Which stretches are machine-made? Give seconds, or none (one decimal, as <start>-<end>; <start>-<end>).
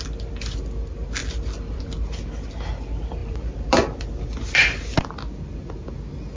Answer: 1.2-1.8; 3.2-4.2